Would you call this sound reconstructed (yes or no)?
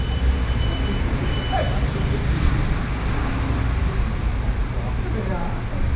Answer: no